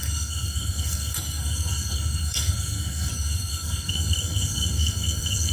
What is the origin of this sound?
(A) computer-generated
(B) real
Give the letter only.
A